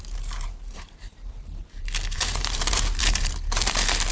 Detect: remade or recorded remade